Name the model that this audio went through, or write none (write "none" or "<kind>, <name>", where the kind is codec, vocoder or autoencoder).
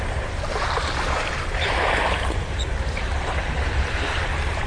vocoder, BigVGAN v2